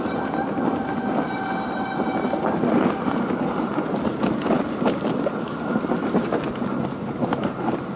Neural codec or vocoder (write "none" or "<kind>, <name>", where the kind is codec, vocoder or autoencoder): none